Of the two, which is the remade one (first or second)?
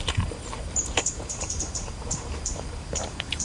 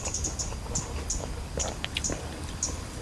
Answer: first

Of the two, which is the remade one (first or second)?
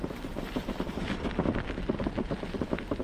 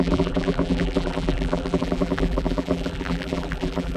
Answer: second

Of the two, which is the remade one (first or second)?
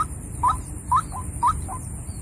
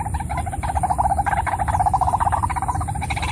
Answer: second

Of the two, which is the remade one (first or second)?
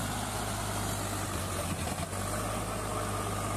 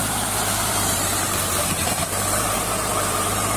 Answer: second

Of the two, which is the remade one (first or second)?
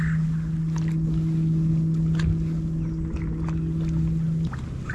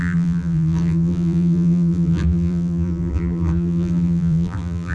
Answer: second